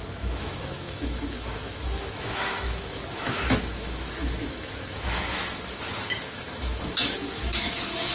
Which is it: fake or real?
fake